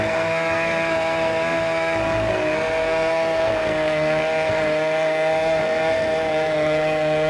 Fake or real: fake